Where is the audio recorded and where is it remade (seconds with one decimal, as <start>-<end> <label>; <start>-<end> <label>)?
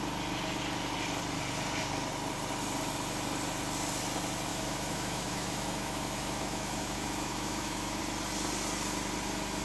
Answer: 0.0-4.5 recorded; 4.5-8.0 remade; 8.0-9.6 recorded